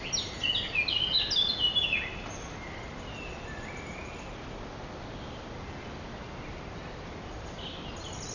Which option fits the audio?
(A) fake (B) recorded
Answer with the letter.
B